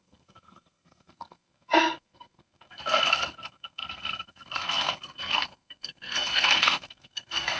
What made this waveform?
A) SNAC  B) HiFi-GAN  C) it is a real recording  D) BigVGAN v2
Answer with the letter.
A